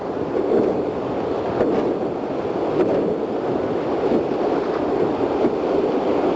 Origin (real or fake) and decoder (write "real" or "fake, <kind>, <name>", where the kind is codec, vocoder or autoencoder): real